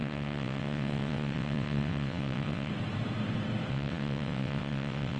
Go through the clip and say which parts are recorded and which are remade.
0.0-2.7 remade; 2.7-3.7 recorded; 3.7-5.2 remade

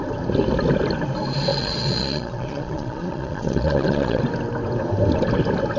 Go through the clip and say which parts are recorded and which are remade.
0.0-1.5 recorded; 1.5-4.2 remade; 4.2-5.8 recorded